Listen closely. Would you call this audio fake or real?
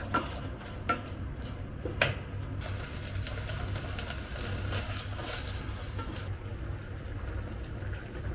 real